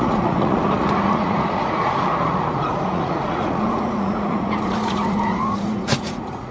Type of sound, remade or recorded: remade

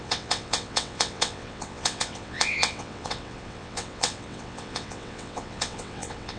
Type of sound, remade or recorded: remade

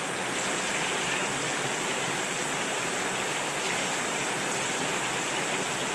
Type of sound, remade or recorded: recorded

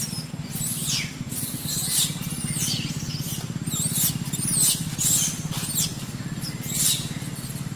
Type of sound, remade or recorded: recorded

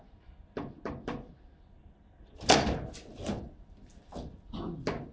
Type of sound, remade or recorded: recorded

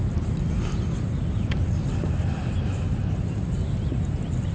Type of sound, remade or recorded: recorded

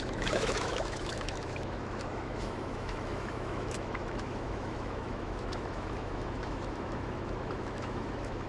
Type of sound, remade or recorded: remade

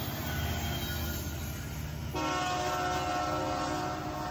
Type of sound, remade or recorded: recorded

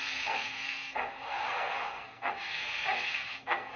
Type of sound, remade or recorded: remade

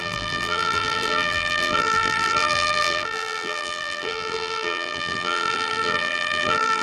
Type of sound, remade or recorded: remade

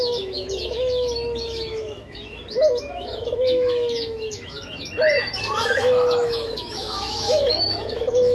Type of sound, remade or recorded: remade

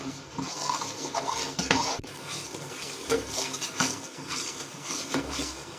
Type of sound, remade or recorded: remade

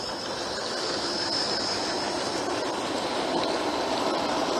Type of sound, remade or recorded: recorded